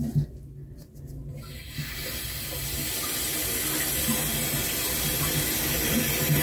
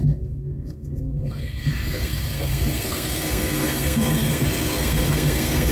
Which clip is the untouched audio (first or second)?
first